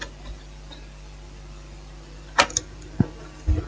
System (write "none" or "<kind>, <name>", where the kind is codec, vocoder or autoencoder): none